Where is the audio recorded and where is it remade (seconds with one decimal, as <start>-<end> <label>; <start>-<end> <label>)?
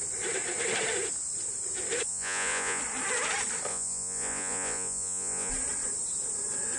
0.0-2.1 recorded; 2.1-2.8 remade; 2.8-3.7 recorded; 3.7-5.5 remade; 5.5-6.8 recorded